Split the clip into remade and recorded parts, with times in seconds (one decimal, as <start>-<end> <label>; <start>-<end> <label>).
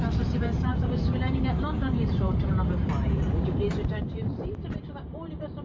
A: 0.0-5.6 remade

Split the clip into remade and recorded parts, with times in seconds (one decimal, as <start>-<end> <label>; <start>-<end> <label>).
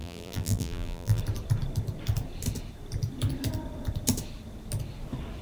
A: 0.0-1.2 remade; 1.2-5.4 recorded